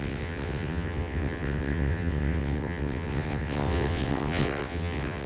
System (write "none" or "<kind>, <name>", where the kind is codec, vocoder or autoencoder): vocoder, WaveNeXt